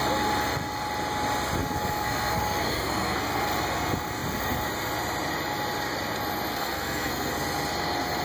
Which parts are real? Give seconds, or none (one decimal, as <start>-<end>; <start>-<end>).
0.0-1.6; 3.5-6.5; 7.3-8.2